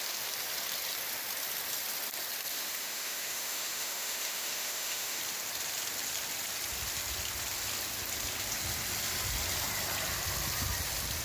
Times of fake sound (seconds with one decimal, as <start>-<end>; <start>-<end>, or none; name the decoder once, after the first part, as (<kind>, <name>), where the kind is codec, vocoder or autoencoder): 2.5-5.2 (autoencoder, DAC-VAE)